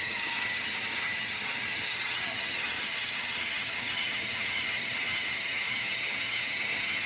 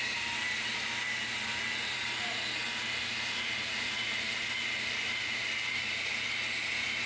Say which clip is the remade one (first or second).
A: first